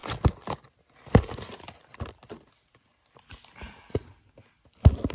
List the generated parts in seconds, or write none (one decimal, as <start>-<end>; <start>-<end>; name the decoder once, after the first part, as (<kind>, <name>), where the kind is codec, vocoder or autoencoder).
none